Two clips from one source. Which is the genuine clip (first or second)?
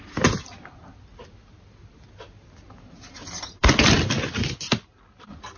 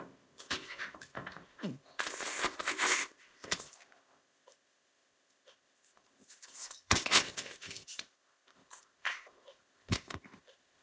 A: first